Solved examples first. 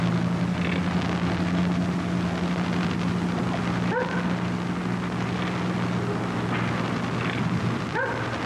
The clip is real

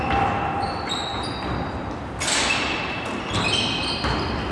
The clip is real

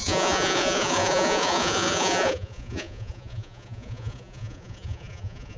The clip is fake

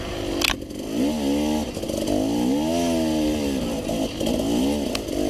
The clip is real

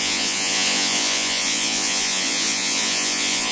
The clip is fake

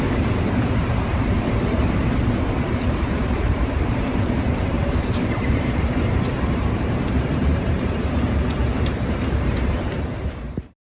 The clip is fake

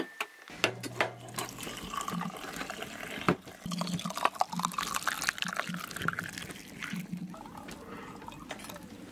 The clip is real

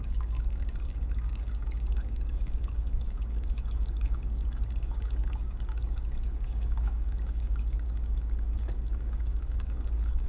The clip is fake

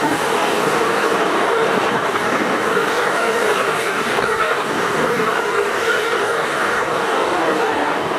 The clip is fake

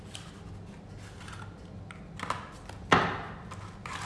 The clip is real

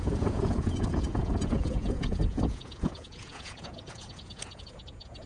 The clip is fake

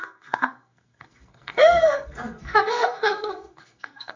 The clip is fake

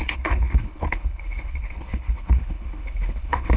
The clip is fake